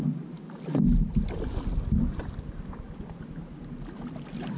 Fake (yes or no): no